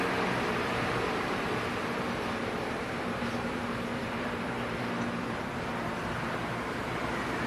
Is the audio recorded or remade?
remade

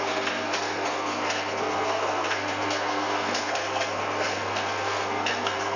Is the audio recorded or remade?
remade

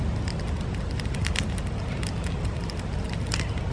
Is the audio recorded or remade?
recorded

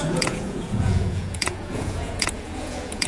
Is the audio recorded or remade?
remade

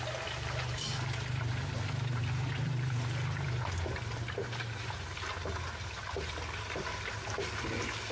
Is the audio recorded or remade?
remade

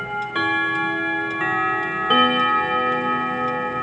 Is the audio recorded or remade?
recorded